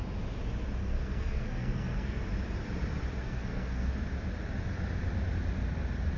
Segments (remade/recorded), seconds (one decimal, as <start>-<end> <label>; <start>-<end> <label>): 0.0-0.8 recorded; 0.8-2.2 remade; 2.2-3.2 recorded; 3.2-3.9 remade; 3.9-6.2 recorded